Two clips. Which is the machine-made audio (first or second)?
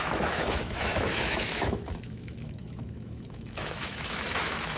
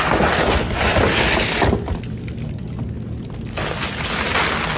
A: first